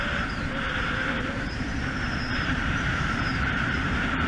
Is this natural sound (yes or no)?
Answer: no